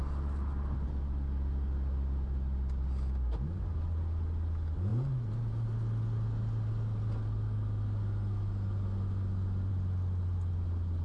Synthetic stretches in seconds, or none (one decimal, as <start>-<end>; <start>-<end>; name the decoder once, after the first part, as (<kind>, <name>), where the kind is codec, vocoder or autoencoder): none